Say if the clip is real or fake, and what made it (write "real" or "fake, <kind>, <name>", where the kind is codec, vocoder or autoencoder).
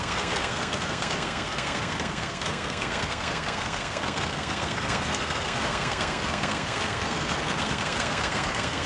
fake, codec, SNAC